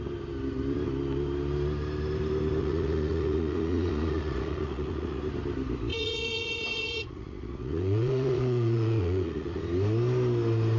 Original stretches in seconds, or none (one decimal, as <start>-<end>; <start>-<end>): 0.0-2.6; 5.2-5.9; 9.6-10.8